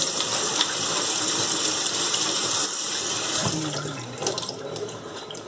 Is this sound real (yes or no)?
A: no